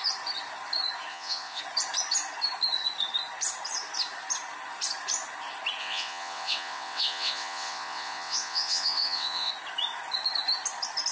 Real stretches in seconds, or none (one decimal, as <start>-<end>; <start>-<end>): 0.0-1.1; 1.6-5.8; 9.5-11.1